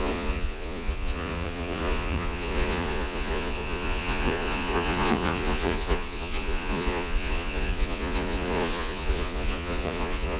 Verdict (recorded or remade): remade